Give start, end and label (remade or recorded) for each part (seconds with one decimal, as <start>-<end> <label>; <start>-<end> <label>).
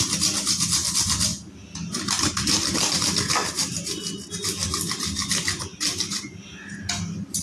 0.0-7.4 recorded